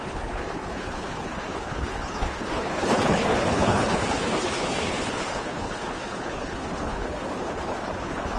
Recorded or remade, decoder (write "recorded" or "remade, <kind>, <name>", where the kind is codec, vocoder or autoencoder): remade, codec, HILCodec